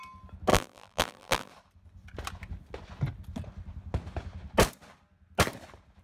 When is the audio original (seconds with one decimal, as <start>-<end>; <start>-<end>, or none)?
0.0-0.5; 1.5-6.0

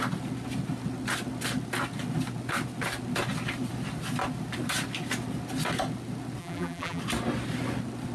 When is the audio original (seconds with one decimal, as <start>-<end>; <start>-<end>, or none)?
0.0-6.4; 7.0-8.1

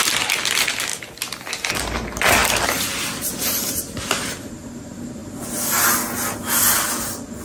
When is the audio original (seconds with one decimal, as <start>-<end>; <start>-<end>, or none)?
0.0-7.4

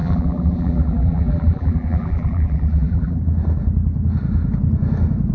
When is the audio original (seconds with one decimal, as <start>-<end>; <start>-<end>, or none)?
3.2-5.3

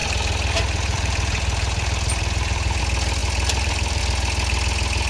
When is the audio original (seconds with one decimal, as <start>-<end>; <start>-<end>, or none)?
2.8-3.2; 4.0-5.1

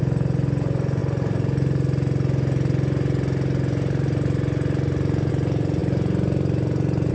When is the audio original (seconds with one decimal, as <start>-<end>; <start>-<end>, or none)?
0.0-7.1

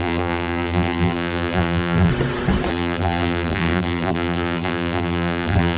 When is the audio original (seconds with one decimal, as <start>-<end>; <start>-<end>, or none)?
2.1-2.7

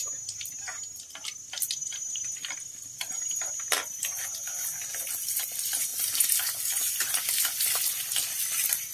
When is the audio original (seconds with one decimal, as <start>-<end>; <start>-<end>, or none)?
0.0-1.8; 5.4-5.9; 7.8-8.9